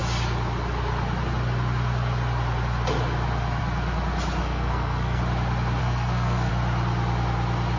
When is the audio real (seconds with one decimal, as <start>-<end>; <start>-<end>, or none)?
0.0-4.4; 5.2-5.8; 6.5-7.8